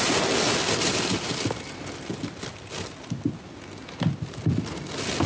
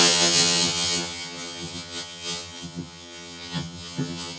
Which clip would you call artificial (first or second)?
second